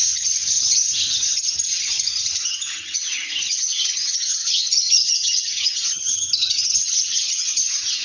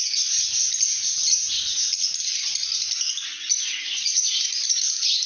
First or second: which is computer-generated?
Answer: first